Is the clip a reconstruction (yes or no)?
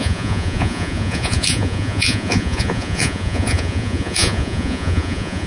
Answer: yes